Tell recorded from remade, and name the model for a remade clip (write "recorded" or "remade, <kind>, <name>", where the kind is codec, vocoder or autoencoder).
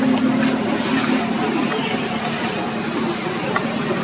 recorded